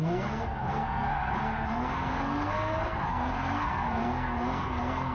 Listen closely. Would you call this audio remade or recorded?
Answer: remade